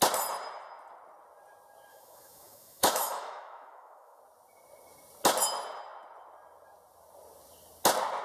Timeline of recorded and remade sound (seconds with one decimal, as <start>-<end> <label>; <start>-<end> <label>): 0.0-1.9 recorded; 1.9-4.2 remade; 4.2-8.2 recorded